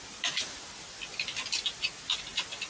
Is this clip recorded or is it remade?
recorded